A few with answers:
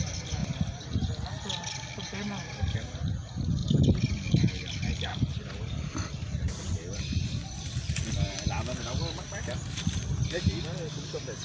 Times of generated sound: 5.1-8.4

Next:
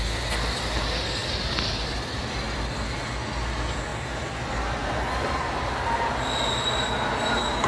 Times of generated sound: 1.2-2.8

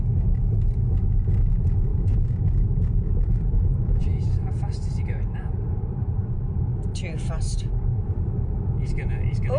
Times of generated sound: 1.9-6.6

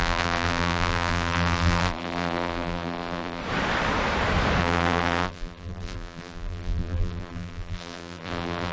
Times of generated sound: 0.0-3.4; 4.6-8.7

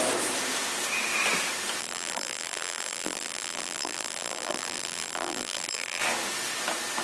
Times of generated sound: 1.8-6.0

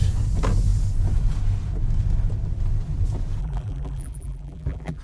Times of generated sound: 3.4-5.0